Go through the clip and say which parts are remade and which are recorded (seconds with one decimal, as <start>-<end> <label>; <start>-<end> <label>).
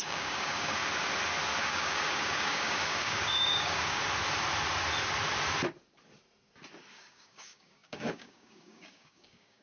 0.0-0.8 remade; 0.8-1.6 recorded; 1.6-4.0 remade; 4.0-6.9 recorded; 6.9-9.6 remade